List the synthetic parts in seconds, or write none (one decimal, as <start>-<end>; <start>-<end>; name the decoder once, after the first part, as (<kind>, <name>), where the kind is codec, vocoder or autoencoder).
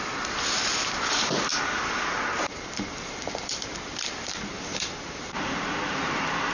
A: 0.0-6.5 (vocoder, BigVGAN v2)